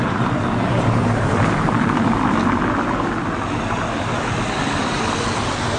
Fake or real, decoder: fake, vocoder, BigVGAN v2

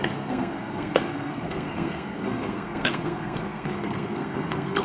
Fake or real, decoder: fake, codec, SNAC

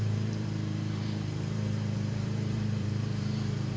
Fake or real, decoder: fake, vocoder, BigVGAN v2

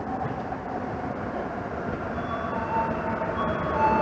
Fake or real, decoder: fake, vocoder, BigVGAN v2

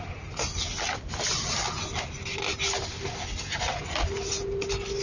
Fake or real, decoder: real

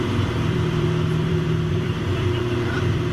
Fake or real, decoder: fake, vocoder, BigVGAN v2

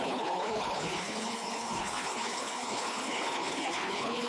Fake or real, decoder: fake, codec, HILCodec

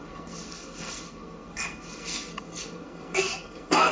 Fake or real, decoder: fake, codec, SNAC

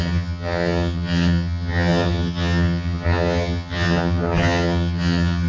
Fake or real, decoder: fake, vocoder, HiFi-GAN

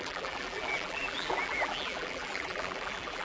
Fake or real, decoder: fake, vocoder, BigVGAN v2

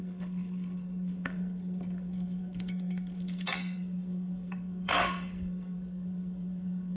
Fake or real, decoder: fake, codec, SNAC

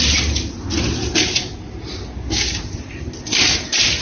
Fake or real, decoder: real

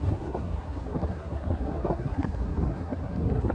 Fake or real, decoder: fake, codec, SNAC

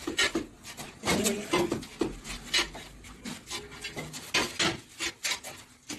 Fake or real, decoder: real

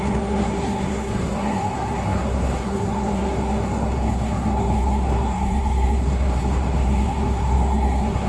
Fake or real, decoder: fake, codec, SNAC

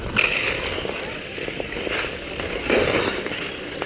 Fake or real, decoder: real